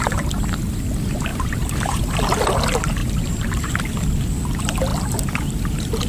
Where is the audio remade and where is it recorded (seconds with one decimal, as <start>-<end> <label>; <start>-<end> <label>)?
0.0-1.3 recorded; 1.3-2.0 remade; 2.0-3.0 recorded; 3.0-3.7 remade; 3.7-6.1 recorded